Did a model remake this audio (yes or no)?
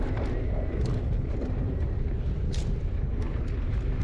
no